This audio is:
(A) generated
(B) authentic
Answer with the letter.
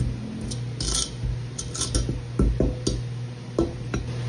B